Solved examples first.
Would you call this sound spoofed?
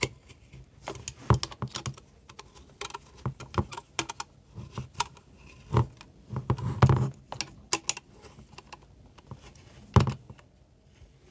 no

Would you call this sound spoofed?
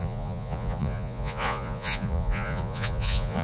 yes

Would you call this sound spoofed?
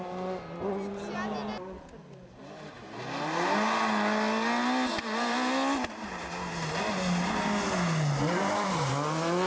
no